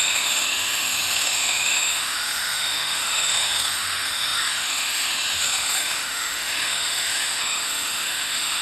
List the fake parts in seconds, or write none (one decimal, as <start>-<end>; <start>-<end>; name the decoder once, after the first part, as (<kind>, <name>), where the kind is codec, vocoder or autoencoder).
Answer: 0.0-8.6 (autoencoder, DAC-VAE)